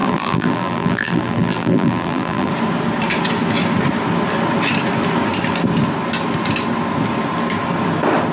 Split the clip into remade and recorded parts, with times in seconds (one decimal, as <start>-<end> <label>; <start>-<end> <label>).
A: 0.0-2.5 remade; 2.5-8.3 recorded